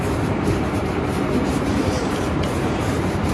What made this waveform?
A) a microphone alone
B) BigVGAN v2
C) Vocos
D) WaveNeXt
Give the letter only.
B